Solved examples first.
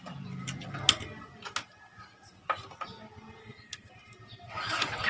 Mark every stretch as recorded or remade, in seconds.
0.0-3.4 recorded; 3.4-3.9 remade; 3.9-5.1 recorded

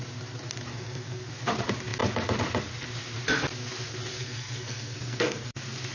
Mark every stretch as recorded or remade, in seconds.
0.0-0.7 recorded; 0.7-1.3 remade; 1.3-4.1 recorded; 4.1-5.5 remade; 5.5-5.9 recorded

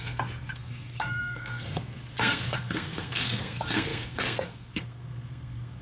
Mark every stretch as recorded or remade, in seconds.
0.0-5.8 remade

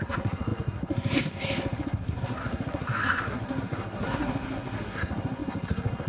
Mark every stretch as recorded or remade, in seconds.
0.0-6.1 remade